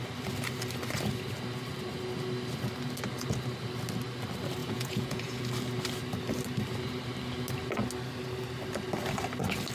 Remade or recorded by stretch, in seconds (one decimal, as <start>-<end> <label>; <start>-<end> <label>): 0.0-4.6 recorded; 4.6-5.4 remade; 5.4-9.7 recorded